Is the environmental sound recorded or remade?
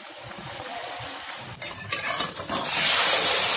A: remade